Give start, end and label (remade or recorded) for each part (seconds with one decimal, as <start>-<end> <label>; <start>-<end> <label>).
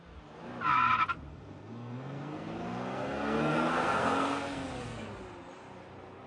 0.0-1.3 recorded; 1.3-5.1 remade; 5.1-6.3 recorded